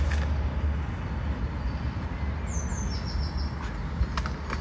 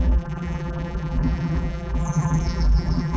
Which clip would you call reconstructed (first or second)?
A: second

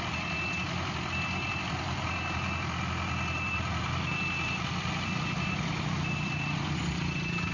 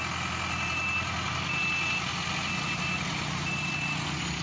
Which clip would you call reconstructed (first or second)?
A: first